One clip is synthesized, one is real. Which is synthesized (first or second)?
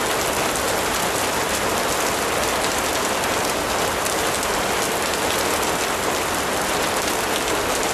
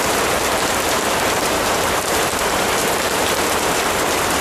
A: second